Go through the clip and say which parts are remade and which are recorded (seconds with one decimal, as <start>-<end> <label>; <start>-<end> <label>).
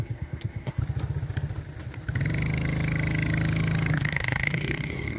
0.0-0.8 remade; 0.8-3.9 recorded; 3.9-5.2 remade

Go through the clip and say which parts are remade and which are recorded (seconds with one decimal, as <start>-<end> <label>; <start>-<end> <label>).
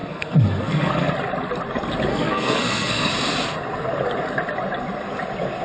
0.0-1.1 remade; 1.1-2.1 recorded; 2.1-3.1 remade; 3.1-5.6 recorded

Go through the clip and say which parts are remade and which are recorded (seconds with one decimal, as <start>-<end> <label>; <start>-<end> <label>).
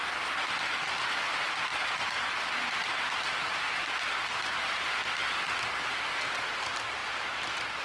0.0-7.8 recorded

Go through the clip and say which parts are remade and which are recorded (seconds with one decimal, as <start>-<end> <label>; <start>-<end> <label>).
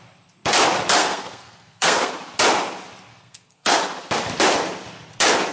0.0-1.0 recorded; 1.0-2.1 remade; 2.1-3.1 recorded; 3.1-3.8 remade; 3.8-5.5 recorded